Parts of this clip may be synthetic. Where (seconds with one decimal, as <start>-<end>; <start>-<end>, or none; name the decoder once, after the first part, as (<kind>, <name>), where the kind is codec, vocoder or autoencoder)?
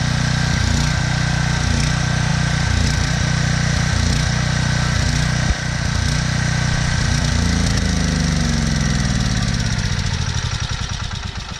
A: 2.3-3.9 (vocoder, BigVGAN v2)